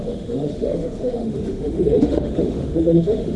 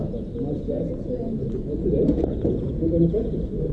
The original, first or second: second